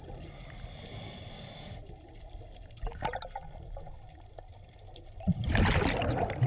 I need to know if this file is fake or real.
real